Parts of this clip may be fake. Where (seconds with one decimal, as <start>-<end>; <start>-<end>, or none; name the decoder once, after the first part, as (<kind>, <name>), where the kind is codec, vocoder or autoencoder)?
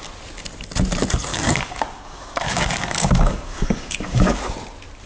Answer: 1.3-4.4 (codec, DAC)